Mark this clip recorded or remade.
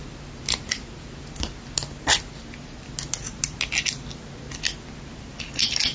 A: recorded